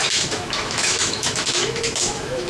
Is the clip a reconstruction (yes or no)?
yes